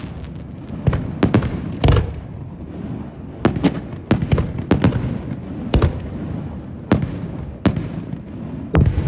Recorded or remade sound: recorded